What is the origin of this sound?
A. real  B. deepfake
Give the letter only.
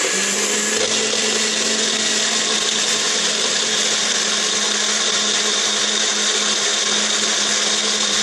A